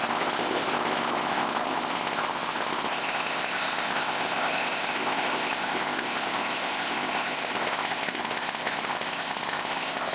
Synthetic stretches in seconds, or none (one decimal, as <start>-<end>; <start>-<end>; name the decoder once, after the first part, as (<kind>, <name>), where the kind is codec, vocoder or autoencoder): 0.0-10.1 (codec, ZipCodec)